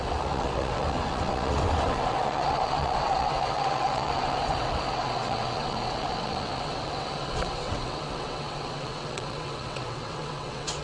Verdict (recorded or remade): remade